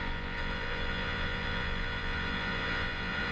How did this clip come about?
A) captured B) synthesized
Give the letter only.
B